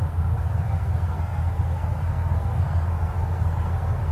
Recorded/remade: remade